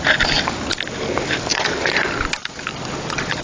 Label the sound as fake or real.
fake